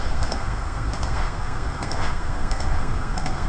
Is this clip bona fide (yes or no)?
no